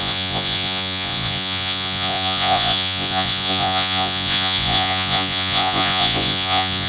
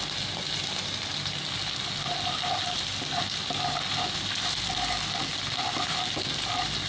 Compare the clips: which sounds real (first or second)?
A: second